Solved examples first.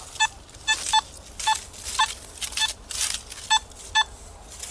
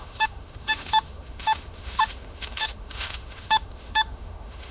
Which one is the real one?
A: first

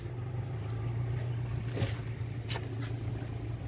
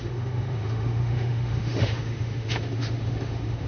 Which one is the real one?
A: first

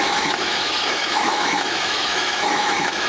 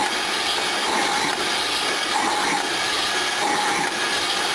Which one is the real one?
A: second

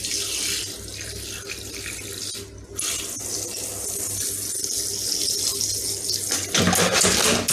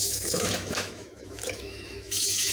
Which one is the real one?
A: first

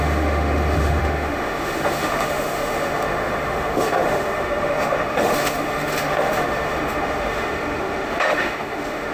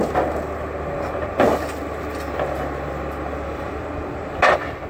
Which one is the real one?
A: second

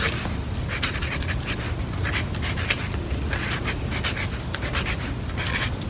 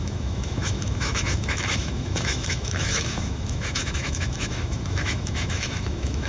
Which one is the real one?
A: first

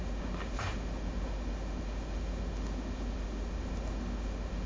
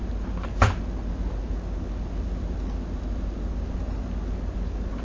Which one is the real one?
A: second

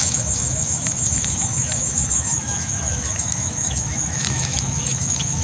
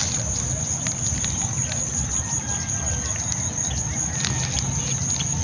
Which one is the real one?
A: second